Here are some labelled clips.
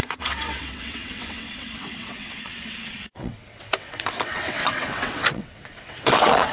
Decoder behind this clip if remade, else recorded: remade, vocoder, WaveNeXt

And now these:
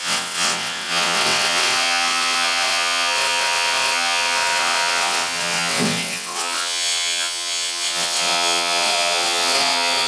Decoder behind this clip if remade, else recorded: remade, vocoder, WaveNeXt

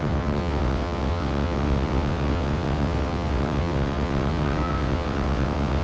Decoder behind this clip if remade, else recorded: remade, vocoder, WaveNeXt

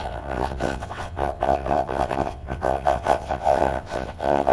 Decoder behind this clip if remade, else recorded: remade, vocoder, WaveNeXt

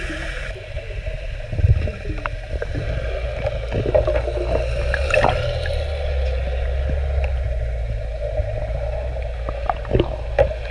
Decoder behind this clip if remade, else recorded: recorded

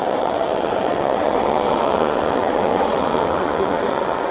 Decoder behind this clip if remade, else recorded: remade, vocoder, WaveNeXt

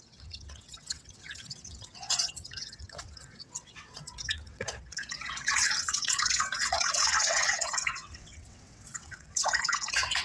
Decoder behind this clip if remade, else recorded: remade, vocoder, WaveNeXt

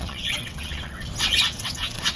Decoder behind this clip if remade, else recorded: remade, vocoder, WaveNeXt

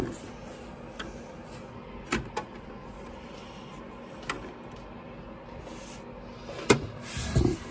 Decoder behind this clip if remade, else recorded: recorded